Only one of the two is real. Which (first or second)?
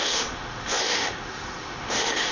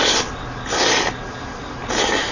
second